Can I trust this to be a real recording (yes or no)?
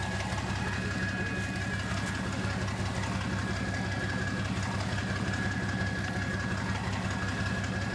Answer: yes